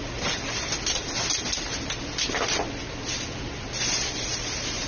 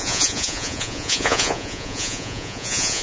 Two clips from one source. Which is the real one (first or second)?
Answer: first